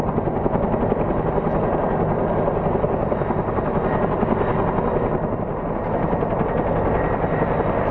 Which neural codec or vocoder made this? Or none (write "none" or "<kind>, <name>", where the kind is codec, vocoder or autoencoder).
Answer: none